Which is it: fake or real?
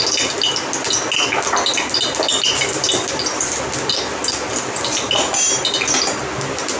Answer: real